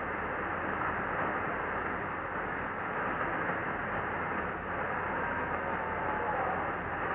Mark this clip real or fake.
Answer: real